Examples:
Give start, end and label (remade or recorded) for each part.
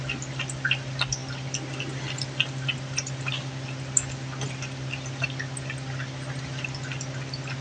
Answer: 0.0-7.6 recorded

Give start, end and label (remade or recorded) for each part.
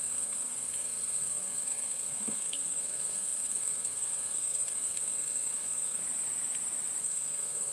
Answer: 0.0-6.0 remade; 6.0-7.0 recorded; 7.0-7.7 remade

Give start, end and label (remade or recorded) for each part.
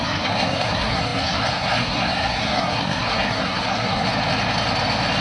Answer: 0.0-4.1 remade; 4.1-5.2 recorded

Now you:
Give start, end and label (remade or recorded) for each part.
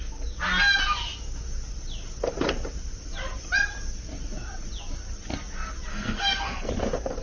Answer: 0.0-5.9 recorded; 5.9-6.7 remade; 6.7-7.2 recorded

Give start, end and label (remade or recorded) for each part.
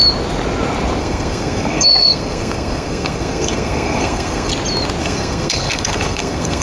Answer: 0.0-1.0 recorded; 1.0-4.5 remade; 4.5-5.0 recorded; 5.0-6.6 remade